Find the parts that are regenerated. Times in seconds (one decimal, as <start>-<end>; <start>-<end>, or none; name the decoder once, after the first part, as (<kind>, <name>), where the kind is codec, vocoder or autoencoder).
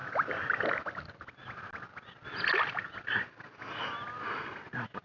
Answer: none